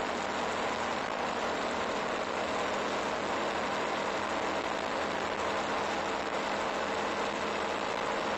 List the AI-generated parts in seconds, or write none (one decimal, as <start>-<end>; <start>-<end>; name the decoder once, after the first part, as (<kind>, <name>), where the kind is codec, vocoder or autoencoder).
0.9-2.0 (vocoder, BigVGAN v2)